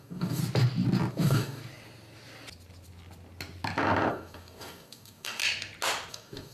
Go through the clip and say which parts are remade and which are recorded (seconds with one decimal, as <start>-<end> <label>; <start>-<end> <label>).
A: 0.0-0.4 remade; 0.4-1.1 recorded; 1.1-1.6 remade; 1.6-4.1 recorded; 4.1-5.4 remade; 5.4-6.1 recorded; 6.1-6.5 remade